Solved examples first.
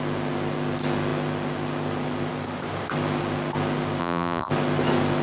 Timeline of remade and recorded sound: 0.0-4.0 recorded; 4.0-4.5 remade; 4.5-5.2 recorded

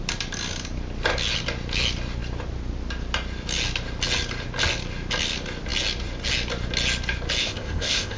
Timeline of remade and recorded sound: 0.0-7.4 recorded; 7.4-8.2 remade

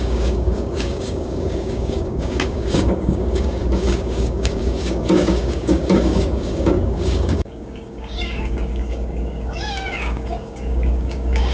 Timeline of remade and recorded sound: 0.0-11.5 remade

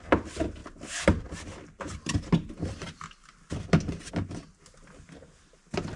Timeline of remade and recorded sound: 0.0-6.0 recorded